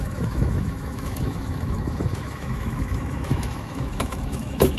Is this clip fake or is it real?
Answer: fake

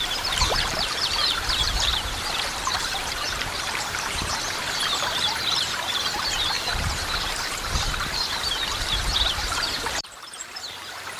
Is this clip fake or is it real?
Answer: fake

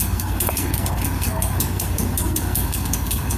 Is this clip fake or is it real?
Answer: fake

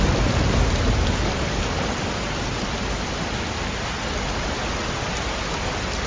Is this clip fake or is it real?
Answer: real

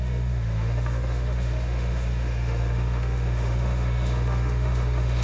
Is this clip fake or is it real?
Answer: fake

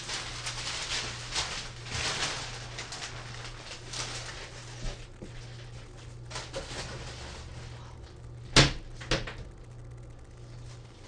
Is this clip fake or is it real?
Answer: real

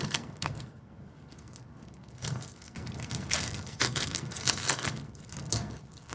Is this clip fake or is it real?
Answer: fake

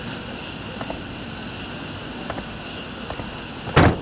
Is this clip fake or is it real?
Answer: real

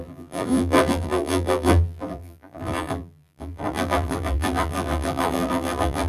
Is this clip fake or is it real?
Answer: fake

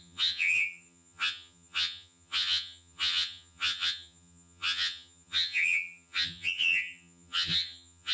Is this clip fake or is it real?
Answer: fake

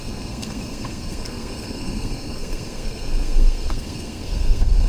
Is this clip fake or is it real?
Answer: fake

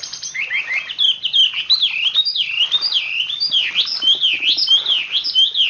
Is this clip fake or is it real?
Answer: real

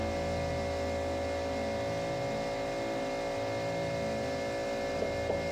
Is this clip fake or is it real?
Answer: real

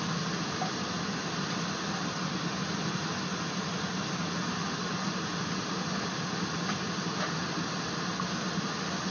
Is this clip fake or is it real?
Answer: real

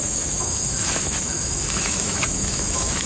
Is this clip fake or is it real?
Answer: fake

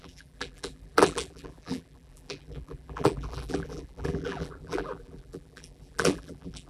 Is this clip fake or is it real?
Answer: fake